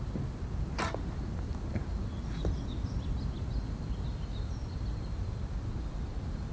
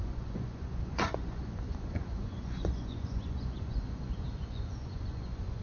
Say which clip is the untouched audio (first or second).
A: first